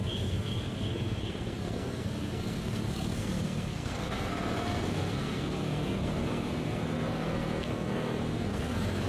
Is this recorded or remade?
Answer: remade